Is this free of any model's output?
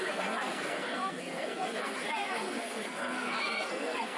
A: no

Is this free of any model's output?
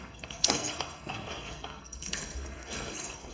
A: no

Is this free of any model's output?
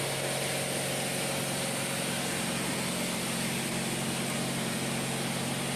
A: yes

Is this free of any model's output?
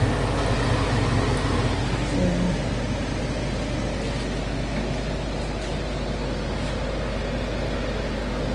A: yes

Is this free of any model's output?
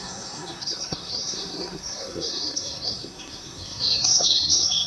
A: no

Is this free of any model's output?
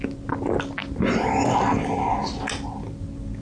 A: yes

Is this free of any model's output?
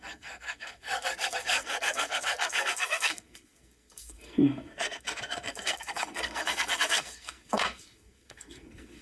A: no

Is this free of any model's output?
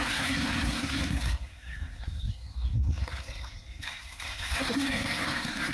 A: no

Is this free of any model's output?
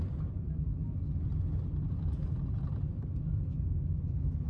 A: yes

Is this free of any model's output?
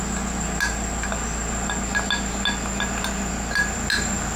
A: yes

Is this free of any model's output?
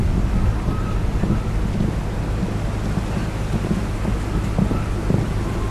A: yes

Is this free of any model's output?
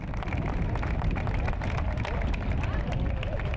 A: yes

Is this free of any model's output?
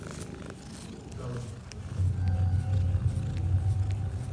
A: yes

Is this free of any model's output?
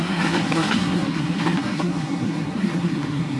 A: no